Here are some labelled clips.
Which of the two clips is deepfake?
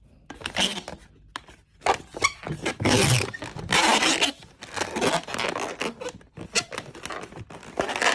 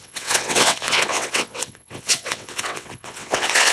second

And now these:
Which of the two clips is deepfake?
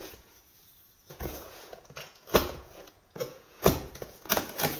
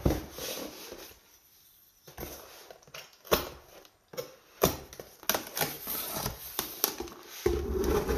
first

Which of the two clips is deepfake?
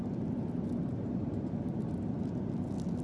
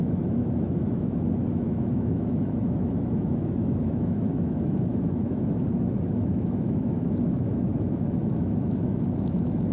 second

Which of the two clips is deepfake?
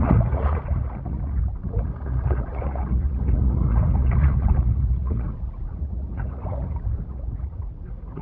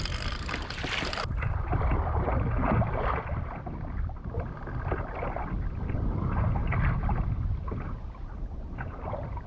first